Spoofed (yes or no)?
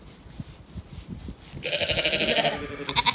no